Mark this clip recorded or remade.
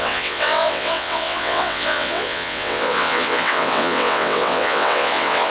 remade